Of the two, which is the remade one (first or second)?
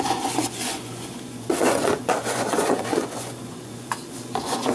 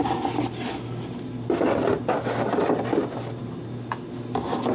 first